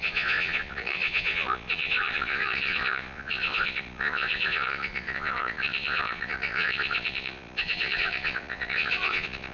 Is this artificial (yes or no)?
yes